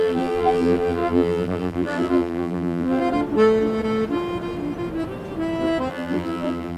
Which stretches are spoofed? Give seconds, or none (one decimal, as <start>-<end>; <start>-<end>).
0.0-3.0; 5.9-6.8